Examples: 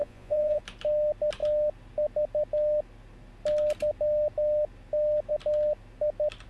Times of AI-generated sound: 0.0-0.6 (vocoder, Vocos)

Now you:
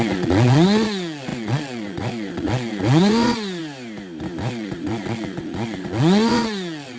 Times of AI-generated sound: 0.0-3.6 (vocoder, Vocos); 4.5-7.0